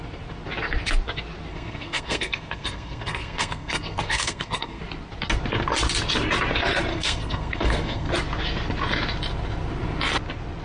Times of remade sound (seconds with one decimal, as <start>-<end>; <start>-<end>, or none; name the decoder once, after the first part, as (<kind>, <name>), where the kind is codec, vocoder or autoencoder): 1.5-4.8 (codec, SNAC); 6.9-8.1